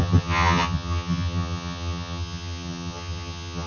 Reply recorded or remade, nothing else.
remade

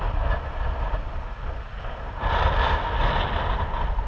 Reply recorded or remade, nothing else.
recorded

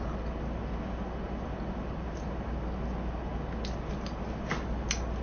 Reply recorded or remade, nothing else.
recorded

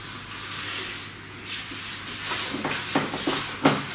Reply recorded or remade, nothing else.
recorded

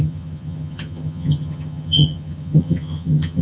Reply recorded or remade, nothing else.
remade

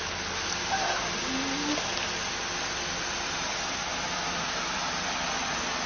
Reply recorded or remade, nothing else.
recorded